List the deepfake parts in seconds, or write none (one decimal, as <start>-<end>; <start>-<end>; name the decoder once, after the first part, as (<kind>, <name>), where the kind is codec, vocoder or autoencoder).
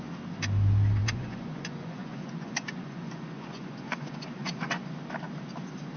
1.0-4.6 (vocoder, Vocos)